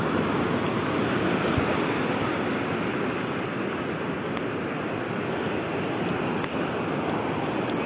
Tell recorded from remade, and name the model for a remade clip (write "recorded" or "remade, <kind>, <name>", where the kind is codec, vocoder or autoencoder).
recorded